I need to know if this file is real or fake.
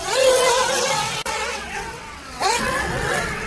fake